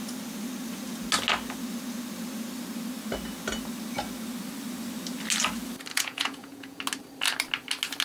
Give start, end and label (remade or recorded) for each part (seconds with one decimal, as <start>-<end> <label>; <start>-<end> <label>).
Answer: 0.0-5.9 recorded; 5.9-6.8 remade; 6.8-8.0 recorded